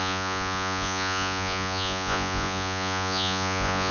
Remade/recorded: remade